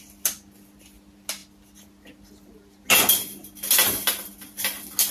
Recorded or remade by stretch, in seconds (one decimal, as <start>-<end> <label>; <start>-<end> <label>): 0.0-5.1 recorded